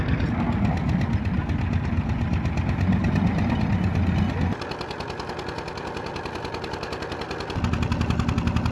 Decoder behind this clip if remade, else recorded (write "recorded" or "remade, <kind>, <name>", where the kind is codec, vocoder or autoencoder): recorded